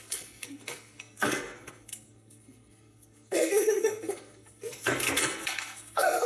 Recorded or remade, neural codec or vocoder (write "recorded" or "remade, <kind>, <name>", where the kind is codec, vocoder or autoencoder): remade, codec, SNAC